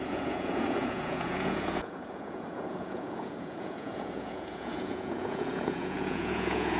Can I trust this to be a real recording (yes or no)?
no